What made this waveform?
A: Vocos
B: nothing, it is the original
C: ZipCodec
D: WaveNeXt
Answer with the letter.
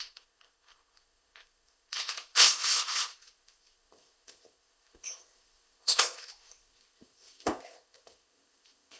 C